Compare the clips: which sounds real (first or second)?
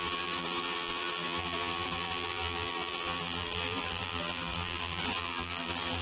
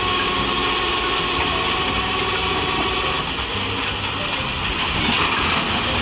second